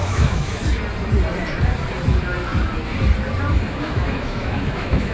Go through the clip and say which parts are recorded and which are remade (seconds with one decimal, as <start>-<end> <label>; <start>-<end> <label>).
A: 0.0-0.6 remade; 0.6-3.7 recorded; 3.7-5.1 remade